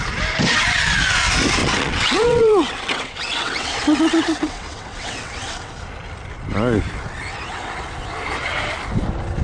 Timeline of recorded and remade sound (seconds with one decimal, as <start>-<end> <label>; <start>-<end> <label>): 0.0-1.6 recorded; 1.6-5.7 remade; 5.7-7.3 recorded; 7.3-7.8 remade; 7.8-9.4 recorded